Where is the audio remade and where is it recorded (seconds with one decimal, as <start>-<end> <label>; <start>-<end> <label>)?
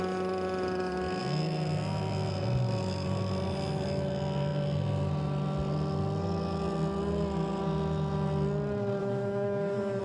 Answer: 0.0-9.0 recorded; 9.0-10.0 remade